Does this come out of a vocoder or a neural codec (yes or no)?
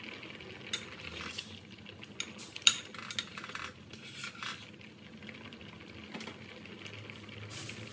no